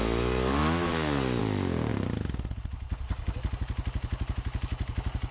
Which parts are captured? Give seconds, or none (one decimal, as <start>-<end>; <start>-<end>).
0.0-5.3